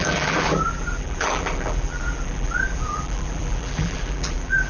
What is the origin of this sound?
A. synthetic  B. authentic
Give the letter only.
A